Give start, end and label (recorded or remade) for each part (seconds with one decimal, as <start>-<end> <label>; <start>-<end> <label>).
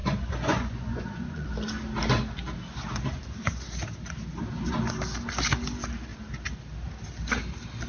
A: 0.0-1.5 remade; 1.5-7.9 recorded